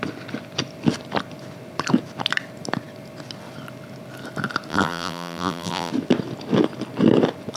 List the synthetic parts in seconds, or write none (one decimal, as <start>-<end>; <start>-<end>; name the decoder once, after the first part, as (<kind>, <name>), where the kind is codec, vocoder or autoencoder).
4.7-5.9 (vocoder, BigVGAN v2)